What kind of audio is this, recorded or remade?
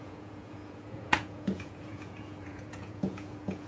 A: remade